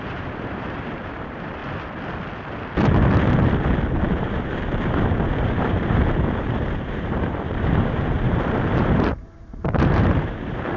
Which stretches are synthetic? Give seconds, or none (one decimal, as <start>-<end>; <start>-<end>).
0.0-1.6; 4.1-10.8